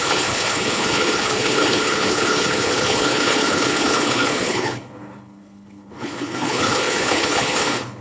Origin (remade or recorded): remade